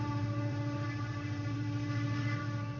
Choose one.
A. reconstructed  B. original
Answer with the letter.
A